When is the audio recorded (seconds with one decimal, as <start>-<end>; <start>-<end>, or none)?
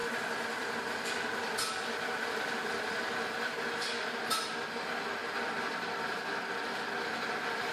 4.3-5.2; 6.2-7.7